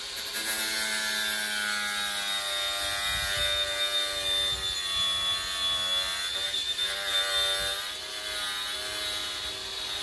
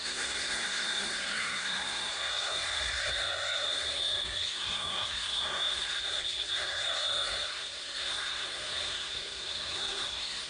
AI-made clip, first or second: second